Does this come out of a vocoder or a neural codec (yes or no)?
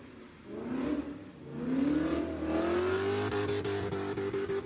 no